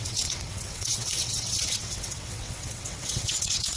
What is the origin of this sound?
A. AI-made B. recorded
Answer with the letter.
A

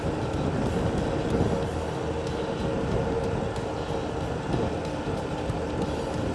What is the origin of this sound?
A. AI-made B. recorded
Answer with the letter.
B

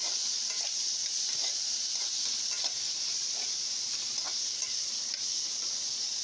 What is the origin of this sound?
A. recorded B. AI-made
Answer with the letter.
A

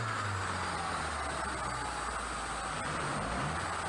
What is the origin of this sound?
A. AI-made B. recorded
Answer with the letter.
B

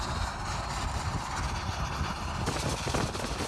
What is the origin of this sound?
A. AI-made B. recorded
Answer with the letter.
B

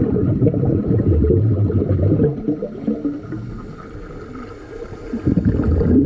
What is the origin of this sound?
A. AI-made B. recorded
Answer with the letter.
B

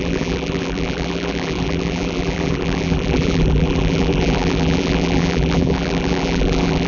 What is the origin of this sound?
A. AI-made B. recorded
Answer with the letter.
A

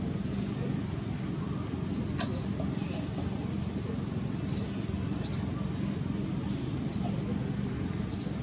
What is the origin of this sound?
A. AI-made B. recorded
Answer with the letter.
B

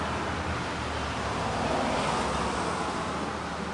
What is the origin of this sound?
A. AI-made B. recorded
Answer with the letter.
B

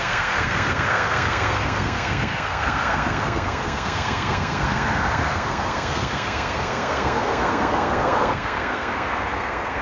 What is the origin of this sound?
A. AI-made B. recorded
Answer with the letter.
A